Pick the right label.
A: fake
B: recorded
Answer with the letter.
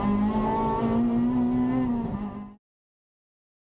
B